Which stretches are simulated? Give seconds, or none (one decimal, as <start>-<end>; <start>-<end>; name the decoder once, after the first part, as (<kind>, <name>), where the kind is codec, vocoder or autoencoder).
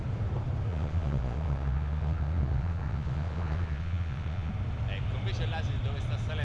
0.7-4.5 (vocoder, Vocos)